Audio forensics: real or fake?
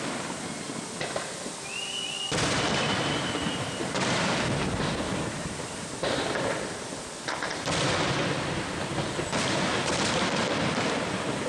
real